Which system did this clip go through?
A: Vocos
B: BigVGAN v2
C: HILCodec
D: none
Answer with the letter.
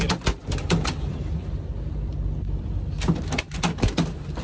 D